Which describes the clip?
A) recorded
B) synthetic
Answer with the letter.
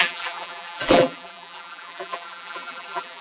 B